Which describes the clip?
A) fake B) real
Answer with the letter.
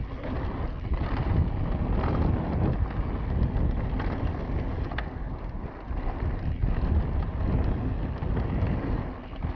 B